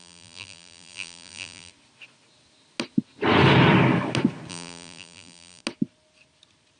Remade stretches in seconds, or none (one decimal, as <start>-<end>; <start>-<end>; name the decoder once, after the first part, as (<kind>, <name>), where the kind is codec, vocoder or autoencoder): 0.0-1.7 (vocoder, BigVGAN v2); 4.5-5.6